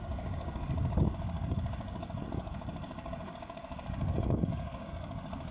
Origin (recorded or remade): remade